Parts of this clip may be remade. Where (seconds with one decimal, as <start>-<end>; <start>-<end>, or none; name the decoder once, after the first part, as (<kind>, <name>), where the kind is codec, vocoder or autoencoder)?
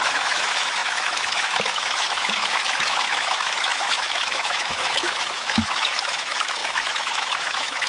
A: 0.0-7.9 (autoencoder, DAC-VAE)